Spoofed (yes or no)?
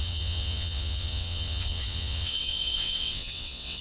yes